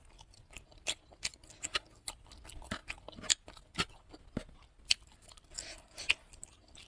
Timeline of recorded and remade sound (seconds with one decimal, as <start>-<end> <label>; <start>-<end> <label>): 0.0-6.9 recorded